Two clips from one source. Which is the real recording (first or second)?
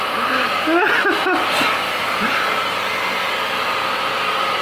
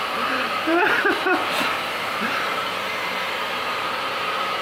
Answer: first